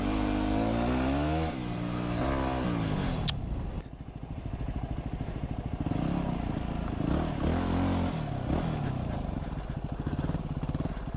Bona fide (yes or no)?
yes